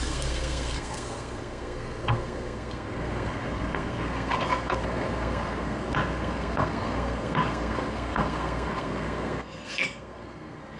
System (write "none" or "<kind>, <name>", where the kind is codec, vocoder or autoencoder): codec, SNAC